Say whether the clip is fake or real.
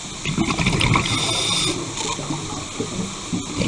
real